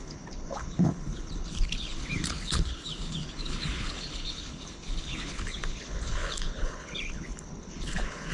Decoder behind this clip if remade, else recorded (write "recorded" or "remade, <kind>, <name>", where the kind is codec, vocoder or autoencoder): remade, codec, HILCodec